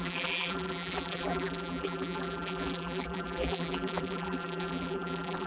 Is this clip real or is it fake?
fake